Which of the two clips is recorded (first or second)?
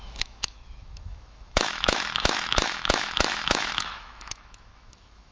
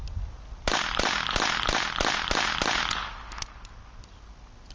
second